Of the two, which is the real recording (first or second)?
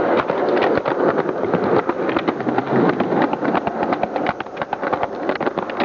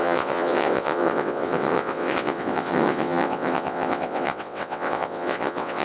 first